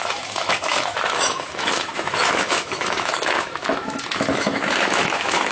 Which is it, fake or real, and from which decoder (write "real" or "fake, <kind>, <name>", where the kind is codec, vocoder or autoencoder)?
fake, autoencoder, DAC-VAE